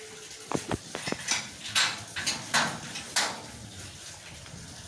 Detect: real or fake real